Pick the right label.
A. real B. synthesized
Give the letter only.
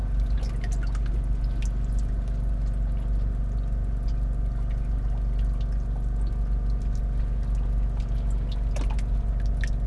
A